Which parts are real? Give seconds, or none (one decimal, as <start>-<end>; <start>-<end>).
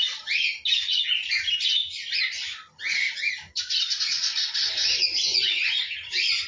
0.0-6.5